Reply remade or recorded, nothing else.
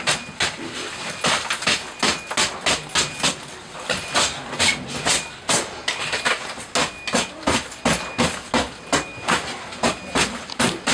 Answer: recorded